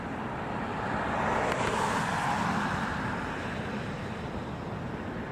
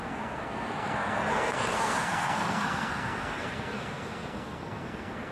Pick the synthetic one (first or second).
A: second